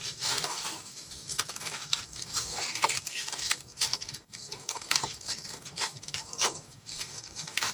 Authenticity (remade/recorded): remade